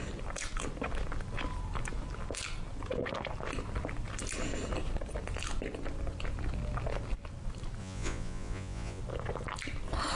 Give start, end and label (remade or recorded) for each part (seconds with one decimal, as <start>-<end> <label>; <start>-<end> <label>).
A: 0.0-7.8 recorded; 7.8-9.0 remade; 9.0-10.2 recorded